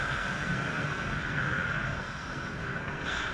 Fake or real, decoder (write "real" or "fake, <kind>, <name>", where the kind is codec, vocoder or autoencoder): fake, codec, SNAC